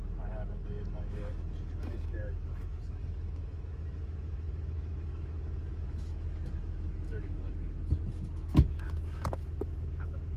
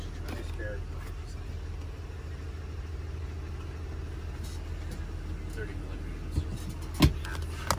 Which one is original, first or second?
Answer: second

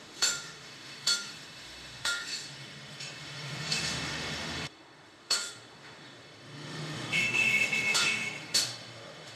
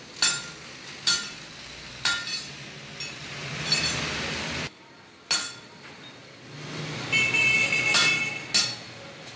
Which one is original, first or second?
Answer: second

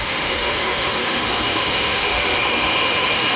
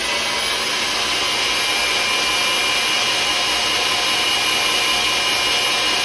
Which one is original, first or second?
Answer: second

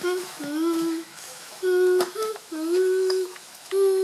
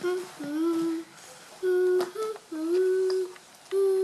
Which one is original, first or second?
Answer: second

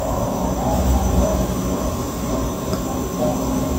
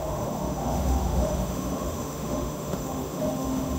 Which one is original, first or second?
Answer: first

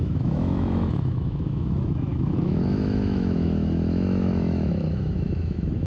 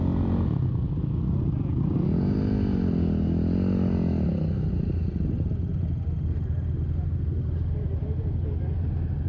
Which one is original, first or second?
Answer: second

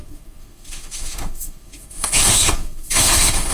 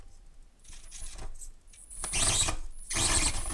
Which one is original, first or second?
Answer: second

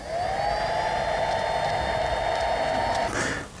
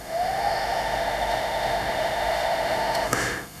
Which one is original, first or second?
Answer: first